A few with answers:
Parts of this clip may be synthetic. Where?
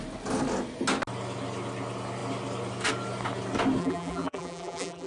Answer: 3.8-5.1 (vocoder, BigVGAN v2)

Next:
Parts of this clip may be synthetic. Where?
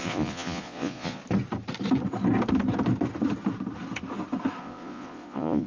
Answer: 0.0-1.2 (vocoder, Vocos); 4.6-5.7